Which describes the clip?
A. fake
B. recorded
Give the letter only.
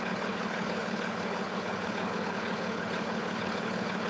A